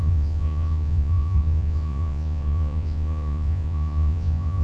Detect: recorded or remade remade